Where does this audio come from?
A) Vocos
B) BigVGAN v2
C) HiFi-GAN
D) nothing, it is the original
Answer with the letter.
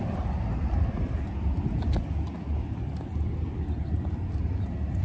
D